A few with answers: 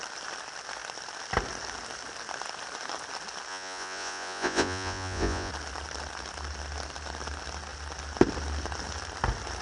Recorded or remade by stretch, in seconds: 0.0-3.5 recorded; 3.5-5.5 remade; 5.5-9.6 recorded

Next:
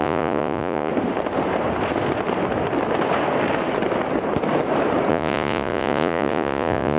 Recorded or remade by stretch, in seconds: 0.0-0.9 remade; 0.9-5.1 recorded; 5.1-7.0 remade

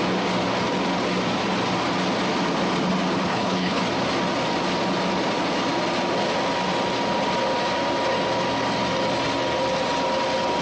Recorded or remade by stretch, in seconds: 0.0-3.3 recorded; 3.3-3.8 remade; 3.8-10.6 recorded

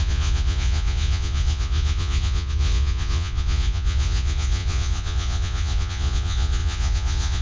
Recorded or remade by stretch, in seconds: 0.0-7.4 remade

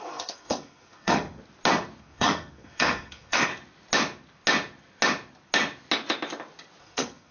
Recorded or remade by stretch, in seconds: 0.0-1.4 remade; 1.4-2.0 recorded; 2.0-3.5 remade; 3.5-6.8 recorded; 6.8-7.3 remade